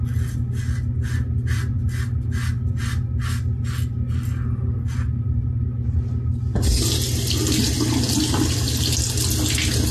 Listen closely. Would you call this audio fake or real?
real